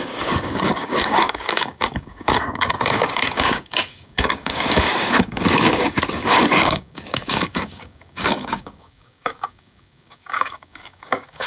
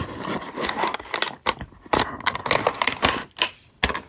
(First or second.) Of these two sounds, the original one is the second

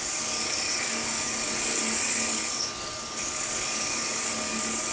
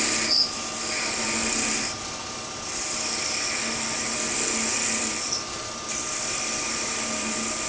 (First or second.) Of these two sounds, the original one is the second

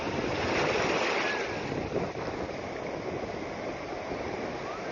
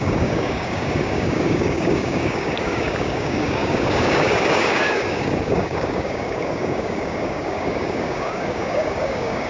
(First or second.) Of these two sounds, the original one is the first